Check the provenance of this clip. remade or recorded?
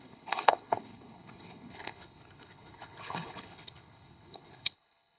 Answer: remade